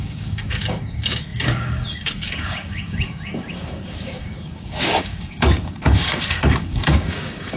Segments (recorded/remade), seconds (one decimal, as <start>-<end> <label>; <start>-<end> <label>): 0.0-7.6 remade